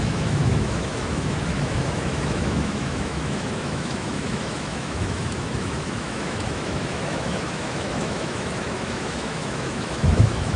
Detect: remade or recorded remade